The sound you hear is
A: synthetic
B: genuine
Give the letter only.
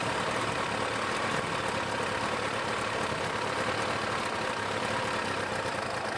B